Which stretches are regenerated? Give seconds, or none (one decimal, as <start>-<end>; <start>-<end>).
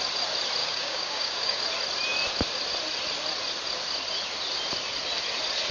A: 0.6-1.6